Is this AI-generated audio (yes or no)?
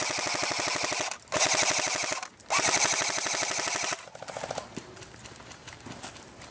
no